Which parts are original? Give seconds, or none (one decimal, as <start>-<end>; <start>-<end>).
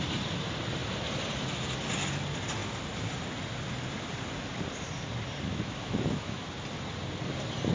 0.0-5.5; 6.4-7.7